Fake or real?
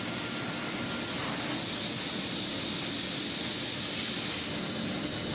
real